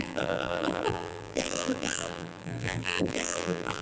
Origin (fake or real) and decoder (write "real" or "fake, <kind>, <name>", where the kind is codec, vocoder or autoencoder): fake, vocoder, BigVGAN v2